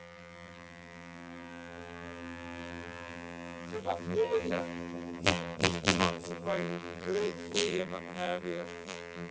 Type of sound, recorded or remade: remade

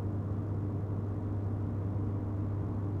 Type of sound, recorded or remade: recorded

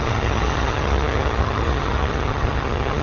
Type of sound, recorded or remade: remade